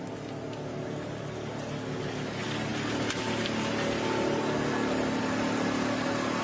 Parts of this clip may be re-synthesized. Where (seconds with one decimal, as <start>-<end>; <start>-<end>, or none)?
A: none